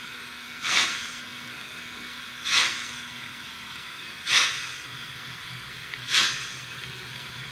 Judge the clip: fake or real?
fake